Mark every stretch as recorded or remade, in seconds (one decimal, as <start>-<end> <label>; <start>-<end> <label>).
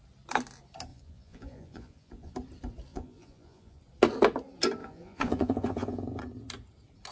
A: 0.0-0.9 recorded; 0.9-2.3 remade; 2.3-2.9 recorded; 2.9-3.8 remade; 3.8-4.8 recorded; 4.8-6.2 remade; 6.2-7.1 recorded